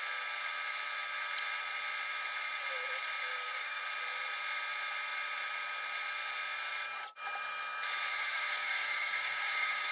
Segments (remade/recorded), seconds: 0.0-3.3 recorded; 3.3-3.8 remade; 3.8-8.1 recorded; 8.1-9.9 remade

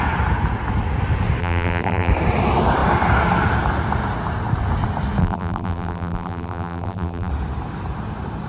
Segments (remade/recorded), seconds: 0.0-1.4 recorded; 1.4-2.1 remade; 2.1-5.2 recorded; 5.2-7.3 remade; 7.3-8.5 recorded

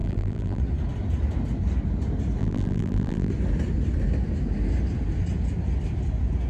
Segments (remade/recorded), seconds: 0.0-0.6 remade; 0.6-2.4 recorded; 2.4-3.3 remade; 3.3-6.5 recorded

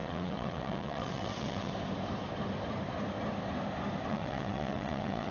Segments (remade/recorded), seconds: 0.0-1.7 remade; 1.7-4.1 recorded; 4.1-5.3 remade